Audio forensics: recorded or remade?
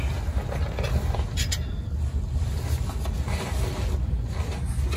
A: recorded